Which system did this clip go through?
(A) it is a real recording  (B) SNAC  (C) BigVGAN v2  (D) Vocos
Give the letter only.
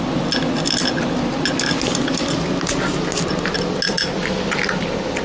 A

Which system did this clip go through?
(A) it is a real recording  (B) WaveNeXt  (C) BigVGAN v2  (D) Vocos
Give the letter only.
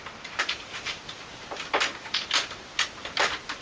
A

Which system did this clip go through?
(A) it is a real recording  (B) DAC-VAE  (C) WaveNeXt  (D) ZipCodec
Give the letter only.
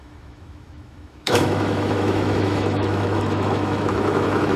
B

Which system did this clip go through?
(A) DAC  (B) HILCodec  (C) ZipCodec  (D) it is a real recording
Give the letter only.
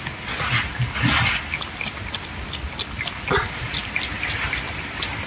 D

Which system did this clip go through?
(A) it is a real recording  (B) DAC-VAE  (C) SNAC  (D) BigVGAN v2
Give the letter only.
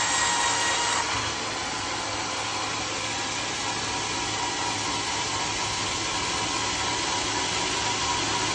A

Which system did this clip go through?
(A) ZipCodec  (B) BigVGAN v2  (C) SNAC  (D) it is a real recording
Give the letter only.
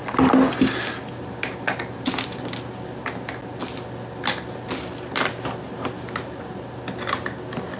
D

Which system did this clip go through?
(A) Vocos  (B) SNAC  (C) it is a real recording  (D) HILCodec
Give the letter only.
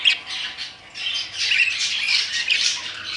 C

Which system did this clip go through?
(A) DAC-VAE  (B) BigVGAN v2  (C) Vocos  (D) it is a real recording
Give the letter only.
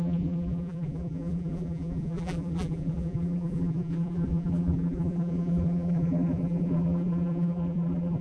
B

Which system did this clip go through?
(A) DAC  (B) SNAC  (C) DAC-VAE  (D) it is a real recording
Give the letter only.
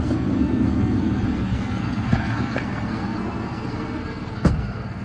B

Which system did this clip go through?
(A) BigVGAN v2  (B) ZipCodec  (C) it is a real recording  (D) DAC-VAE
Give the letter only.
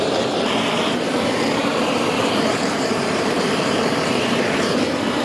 A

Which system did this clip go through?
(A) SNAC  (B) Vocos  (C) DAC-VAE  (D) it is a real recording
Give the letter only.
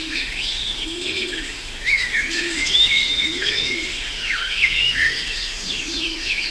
C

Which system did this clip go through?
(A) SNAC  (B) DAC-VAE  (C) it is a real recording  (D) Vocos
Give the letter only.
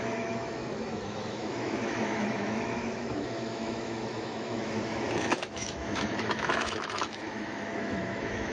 B